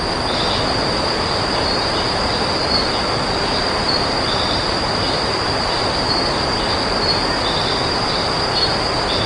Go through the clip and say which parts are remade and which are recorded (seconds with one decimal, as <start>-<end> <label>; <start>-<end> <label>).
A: 0.0-3.8 recorded; 3.8-5.8 remade; 5.8-9.3 recorded

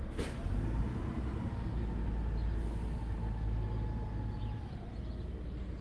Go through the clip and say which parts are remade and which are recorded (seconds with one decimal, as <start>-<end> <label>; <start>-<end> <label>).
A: 0.0-5.8 recorded

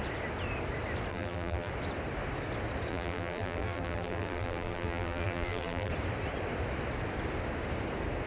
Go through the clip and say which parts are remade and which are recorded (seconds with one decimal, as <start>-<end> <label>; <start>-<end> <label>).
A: 0.0-1.1 recorded; 1.1-1.7 remade; 1.7-2.9 recorded; 2.9-5.9 remade; 5.9-8.3 recorded

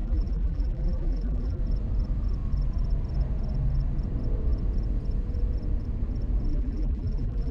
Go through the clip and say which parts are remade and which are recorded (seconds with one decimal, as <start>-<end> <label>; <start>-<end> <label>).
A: 0.0-1.6 remade; 1.6-6.5 recorded; 6.5-7.5 remade

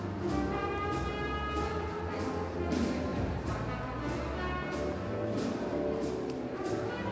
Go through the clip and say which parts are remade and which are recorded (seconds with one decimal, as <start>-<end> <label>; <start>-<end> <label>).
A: 0.0-3.1 recorded; 3.1-3.9 remade; 3.9-5.7 recorded; 5.7-7.1 remade

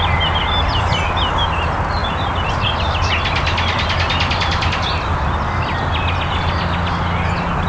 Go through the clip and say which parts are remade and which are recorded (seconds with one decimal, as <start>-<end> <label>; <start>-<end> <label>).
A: 0.0-7.7 recorded

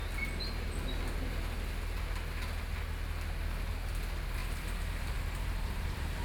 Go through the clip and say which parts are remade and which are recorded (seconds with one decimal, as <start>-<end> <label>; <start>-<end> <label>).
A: 0.0-4.4 recorded; 4.4-6.2 remade